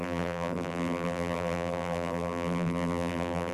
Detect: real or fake fake